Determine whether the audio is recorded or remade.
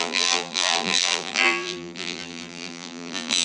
remade